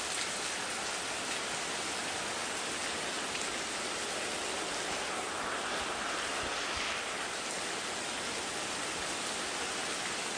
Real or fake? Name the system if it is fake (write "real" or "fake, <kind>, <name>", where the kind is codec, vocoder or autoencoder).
real